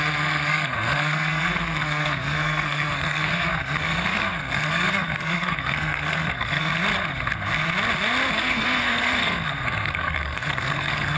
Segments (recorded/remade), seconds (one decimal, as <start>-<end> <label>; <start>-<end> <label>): 0.0-6.7 remade; 6.7-8.3 recorded; 8.3-11.2 remade